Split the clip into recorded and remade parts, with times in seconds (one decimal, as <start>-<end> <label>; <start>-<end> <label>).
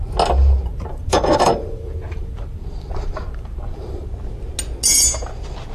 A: 0.0-0.7 recorded; 0.7-4.1 remade; 4.1-5.7 recorded